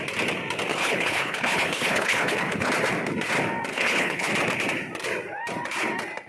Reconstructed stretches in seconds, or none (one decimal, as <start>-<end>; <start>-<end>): 0.7-2.7; 3.7-4.3